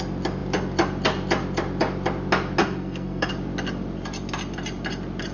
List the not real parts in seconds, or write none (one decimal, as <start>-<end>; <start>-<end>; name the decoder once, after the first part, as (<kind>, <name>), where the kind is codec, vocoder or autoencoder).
2.6-3.3 (codec, SNAC)